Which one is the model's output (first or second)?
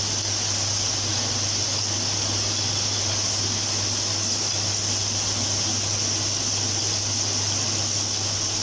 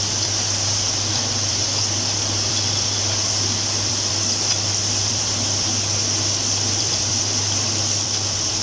second